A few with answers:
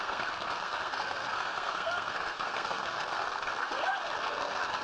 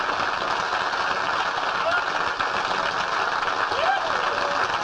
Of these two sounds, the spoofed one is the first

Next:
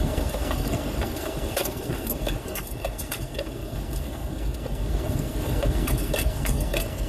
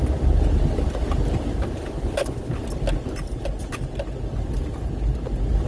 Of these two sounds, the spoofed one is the first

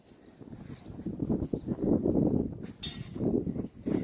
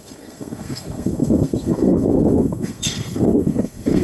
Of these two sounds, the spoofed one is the second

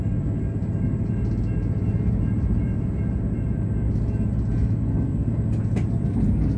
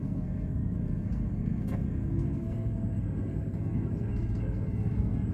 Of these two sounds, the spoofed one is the second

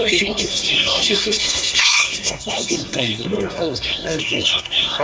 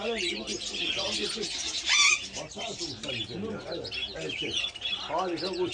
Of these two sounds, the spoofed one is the first